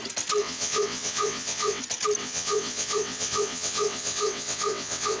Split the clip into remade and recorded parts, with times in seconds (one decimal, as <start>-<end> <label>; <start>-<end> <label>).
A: 0.0-0.4 recorded; 0.4-1.8 remade; 1.8-2.2 recorded; 2.2-5.2 remade